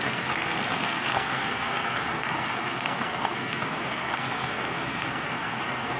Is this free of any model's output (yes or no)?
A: no